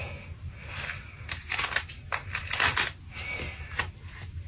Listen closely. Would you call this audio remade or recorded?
recorded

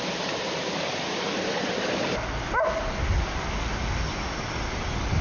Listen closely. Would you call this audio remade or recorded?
recorded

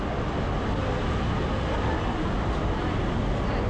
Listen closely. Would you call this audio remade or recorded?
recorded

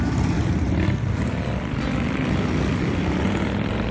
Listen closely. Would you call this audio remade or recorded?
recorded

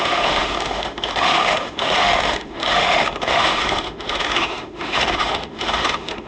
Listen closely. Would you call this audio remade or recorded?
remade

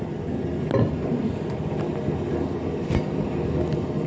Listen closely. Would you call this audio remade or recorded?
recorded